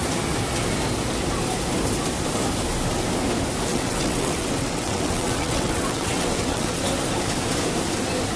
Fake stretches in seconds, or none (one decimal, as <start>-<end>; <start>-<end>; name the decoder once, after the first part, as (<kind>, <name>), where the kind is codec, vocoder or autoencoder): 3.7-6.8 (vocoder, WaveNeXt)